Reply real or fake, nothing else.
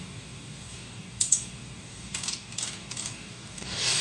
fake